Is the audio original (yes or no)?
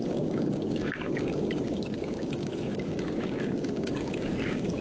no